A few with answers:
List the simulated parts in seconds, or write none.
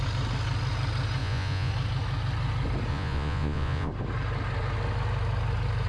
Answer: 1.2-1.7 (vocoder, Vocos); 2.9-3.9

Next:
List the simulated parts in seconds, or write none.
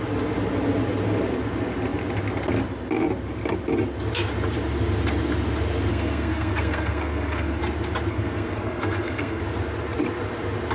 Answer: 5.9-7.6 (codec, SNAC); 8.1-9.4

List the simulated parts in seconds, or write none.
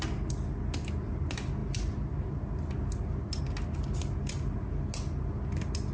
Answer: none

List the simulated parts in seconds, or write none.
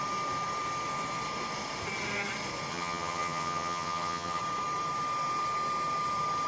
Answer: 2.7-4.4 (vocoder, HiFi-GAN)